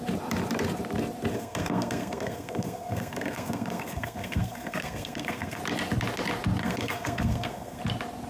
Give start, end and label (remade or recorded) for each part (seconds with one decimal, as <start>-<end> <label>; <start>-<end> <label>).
0.0-1.3 recorded; 1.3-5.6 remade; 5.6-6.6 recorded; 6.6-7.8 remade; 7.8-8.3 recorded

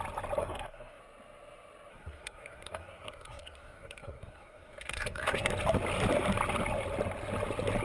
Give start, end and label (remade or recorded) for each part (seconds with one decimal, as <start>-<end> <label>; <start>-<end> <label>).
0.0-0.4 recorded; 0.4-1.0 remade; 1.0-1.9 recorded; 1.9-5.5 remade; 5.5-7.8 recorded

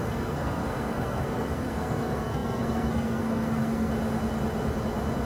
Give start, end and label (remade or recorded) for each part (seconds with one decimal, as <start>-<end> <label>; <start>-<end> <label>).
0.0-3.9 remade; 3.9-5.3 recorded

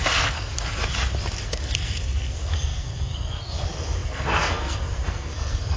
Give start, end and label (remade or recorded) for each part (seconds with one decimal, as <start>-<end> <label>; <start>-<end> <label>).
0.0-0.5 remade; 0.5-1.4 recorded; 1.4-5.8 remade